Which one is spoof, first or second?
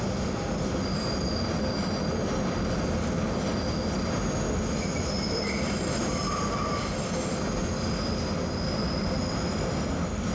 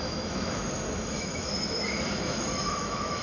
second